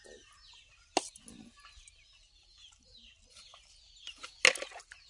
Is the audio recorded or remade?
recorded